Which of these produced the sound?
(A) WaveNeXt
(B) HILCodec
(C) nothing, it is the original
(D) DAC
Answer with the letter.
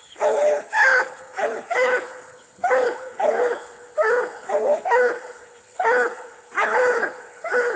B